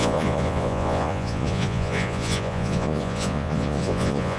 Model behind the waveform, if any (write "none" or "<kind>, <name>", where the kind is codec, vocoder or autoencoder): vocoder, Vocos